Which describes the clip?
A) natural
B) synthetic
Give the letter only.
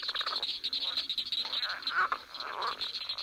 A